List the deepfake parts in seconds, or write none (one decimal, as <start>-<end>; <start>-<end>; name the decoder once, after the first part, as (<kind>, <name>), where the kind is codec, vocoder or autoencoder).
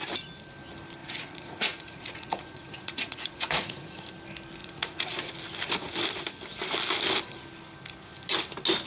1.0-4.1 (vocoder, Vocos); 4.6-5.3